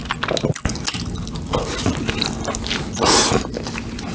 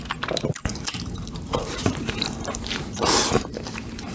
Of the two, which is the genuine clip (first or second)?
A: first